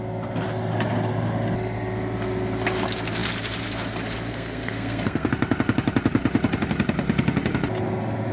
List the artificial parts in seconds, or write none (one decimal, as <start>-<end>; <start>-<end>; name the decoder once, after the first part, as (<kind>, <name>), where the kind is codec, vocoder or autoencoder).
4.3-5.3 (codec, SNAC)